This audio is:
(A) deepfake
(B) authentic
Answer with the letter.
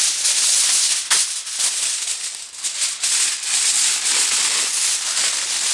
B